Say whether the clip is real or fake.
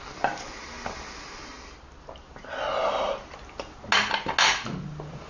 real